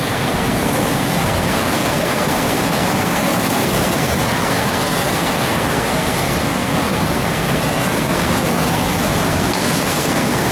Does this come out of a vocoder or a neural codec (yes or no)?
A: yes